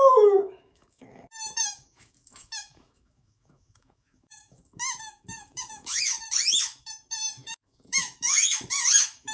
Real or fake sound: fake